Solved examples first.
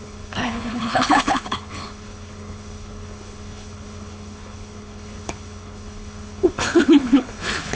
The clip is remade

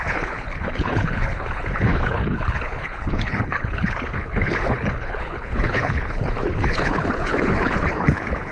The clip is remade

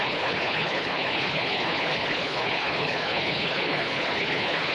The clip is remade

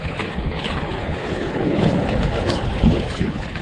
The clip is remade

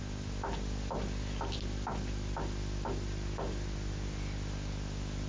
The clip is recorded